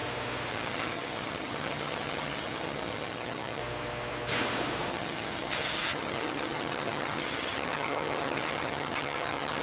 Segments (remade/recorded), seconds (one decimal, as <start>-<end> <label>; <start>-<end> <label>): 0.0-0.5 recorded; 0.5-3.6 remade; 3.6-4.9 recorded; 4.9-9.6 remade